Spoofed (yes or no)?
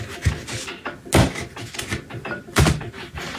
no